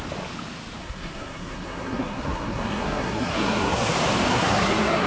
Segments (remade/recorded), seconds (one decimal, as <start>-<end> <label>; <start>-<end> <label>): 0.0-0.8 recorded; 0.8-3.9 remade; 3.9-4.3 recorded; 4.3-5.1 remade